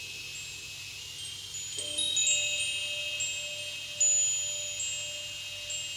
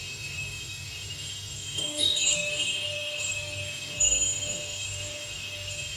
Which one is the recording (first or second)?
first